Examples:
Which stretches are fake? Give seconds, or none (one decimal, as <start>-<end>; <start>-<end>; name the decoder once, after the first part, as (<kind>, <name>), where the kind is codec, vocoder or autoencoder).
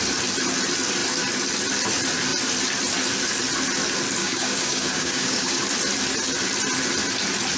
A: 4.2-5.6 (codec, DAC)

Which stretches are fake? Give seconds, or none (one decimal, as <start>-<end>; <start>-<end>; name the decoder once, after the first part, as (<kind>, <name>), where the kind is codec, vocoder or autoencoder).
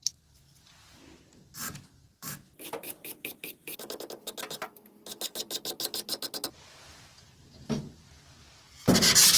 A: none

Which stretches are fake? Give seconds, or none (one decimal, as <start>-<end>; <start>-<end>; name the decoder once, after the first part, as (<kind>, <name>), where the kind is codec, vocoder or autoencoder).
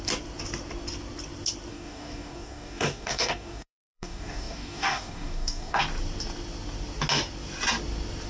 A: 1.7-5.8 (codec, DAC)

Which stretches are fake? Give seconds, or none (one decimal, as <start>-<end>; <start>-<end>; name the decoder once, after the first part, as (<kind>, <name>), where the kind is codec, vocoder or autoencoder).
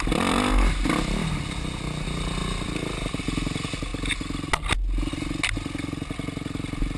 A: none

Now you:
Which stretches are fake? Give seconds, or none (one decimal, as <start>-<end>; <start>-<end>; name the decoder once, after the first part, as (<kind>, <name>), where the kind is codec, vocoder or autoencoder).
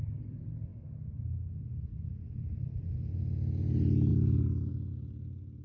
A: none